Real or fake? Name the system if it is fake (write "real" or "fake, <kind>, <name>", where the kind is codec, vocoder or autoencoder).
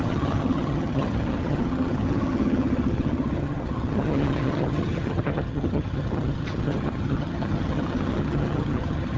fake, vocoder, HiFi-GAN